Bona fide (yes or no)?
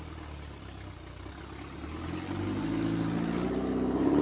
yes